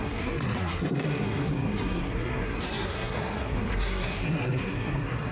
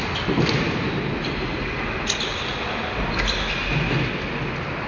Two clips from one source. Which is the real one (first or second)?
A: second